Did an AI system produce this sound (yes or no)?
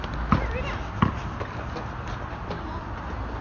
no